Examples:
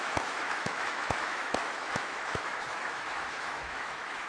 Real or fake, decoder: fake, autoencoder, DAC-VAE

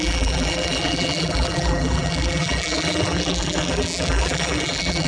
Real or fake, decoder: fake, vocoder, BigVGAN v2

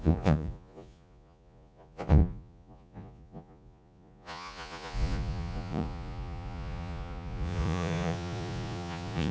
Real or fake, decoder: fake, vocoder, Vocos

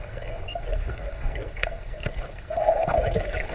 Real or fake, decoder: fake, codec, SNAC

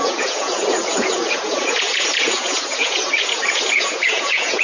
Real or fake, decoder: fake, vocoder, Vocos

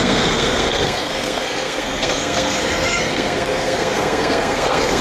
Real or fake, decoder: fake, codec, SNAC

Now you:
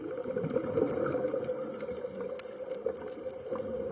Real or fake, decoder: real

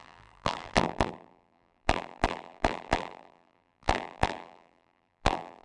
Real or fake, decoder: fake, vocoder, BigVGAN v2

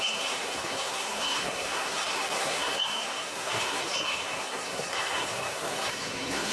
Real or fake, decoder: fake, codec, SNAC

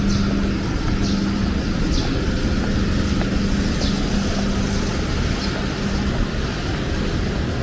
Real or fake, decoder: real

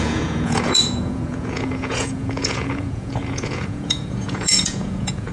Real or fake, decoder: fake, vocoder, Vocos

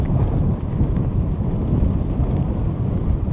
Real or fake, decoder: fake, vocoder, BigVGAN v2